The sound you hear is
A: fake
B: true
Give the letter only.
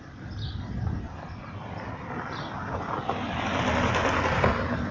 B